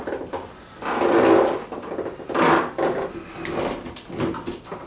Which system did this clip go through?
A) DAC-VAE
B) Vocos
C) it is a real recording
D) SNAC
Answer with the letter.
C